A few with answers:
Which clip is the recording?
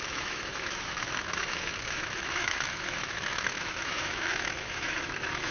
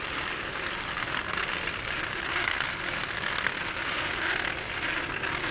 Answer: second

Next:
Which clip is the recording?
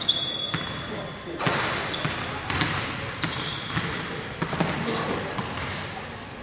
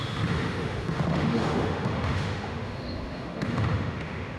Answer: first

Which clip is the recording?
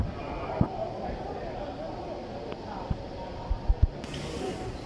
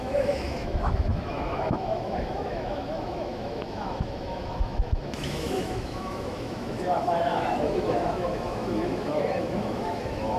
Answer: first